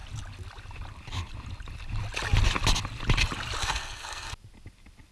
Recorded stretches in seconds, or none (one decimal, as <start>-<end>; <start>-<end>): 0.0-3.6; 4.3-5.1